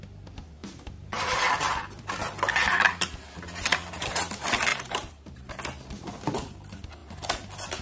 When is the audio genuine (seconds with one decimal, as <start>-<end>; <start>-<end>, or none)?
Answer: 0.0-0.6; 1.5-4.7; 5.6-7.8